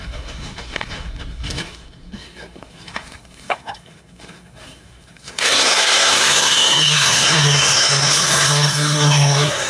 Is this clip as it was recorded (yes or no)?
no